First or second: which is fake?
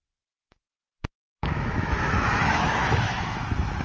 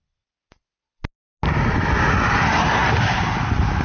first